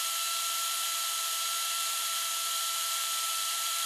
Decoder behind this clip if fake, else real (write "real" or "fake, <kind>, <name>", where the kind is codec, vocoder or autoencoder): fake, vocoder, BigVGAN v2